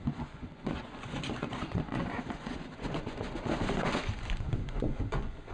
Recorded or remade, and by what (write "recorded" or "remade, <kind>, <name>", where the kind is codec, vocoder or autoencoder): remade, vocoder, Vocos